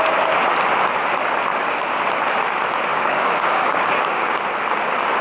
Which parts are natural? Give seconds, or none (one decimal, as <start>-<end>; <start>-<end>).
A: 0.0-1.5; 2.0-2.9; 4.4-5.2